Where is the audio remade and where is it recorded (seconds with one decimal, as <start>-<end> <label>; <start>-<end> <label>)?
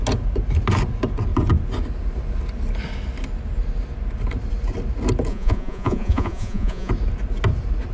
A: 0.0-5.3 recorded; 5.3-6.9 remade; 6.9-7.9 recorded